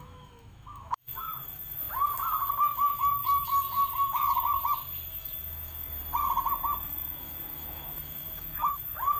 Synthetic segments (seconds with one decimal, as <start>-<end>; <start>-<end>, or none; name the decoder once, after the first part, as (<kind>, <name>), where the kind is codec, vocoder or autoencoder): 0.0-1.8 (autoencoder, DAC-VAE); 2.5-4.6; 5.1-5.9; 6.5-9.2